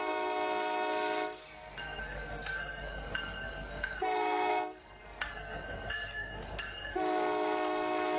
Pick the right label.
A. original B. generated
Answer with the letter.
B